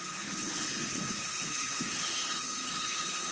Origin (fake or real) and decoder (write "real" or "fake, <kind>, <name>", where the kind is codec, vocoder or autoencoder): fake, codec, HILCodec